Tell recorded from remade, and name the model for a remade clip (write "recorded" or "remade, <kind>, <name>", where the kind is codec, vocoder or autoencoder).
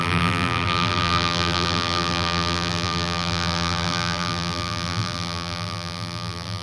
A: remade, vocoder, BigVGAN v2